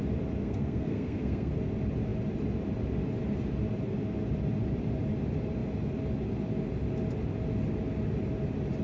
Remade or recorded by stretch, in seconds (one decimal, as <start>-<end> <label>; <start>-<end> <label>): 0.0-0.4 recorded; 0.4-1.5 remade; 1.5-8.8 recorded